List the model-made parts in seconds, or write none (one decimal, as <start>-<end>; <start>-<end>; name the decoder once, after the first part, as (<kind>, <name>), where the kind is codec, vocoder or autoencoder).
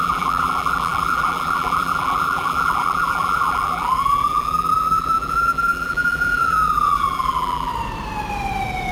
0.0-7.7 (vocoder, BigVGAN v2)